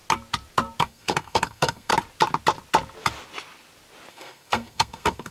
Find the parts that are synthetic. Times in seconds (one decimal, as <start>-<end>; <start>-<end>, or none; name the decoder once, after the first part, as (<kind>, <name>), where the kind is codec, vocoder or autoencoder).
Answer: 0.8-1.9 (codec, SNAC); 4.1-5.3